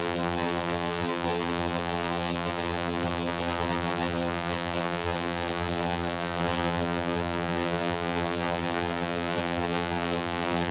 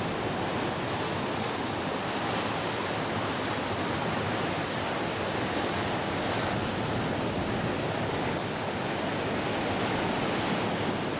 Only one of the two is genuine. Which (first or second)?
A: second